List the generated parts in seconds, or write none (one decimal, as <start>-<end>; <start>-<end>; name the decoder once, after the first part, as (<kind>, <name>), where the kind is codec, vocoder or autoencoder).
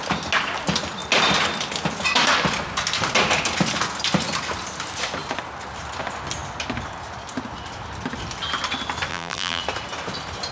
9.1-9.6 (vocoder, BigVGAN v2)